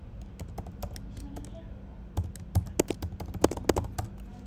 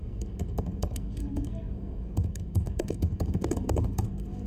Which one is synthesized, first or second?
second